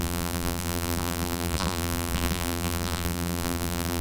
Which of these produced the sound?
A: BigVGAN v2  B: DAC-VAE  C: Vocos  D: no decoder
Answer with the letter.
A